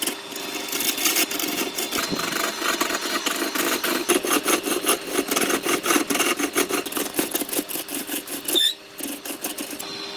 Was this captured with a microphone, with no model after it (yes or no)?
yes